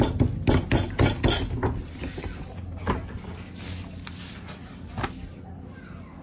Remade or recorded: recorded